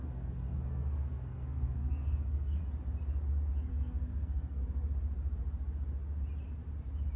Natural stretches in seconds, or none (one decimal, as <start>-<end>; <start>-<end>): 2.6-3.7; 4.6-7.2